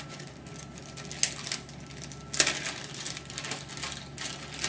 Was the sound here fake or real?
real